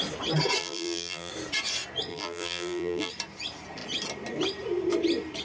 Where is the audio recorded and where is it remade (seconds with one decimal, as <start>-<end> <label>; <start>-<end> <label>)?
0.0-0.6 recorded; 0.6-1.3 remade; 1.3-2.1 recorded; 2.1-3.1 remade; 3.1-5.4 recorded